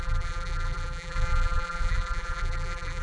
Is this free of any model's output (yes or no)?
no